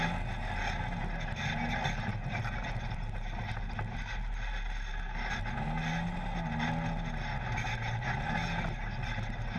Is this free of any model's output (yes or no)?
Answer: yes